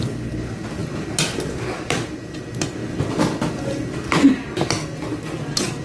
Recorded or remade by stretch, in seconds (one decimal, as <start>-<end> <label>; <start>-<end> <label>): 0.0-5.8 recorded